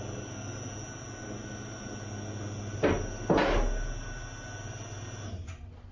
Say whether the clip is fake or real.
real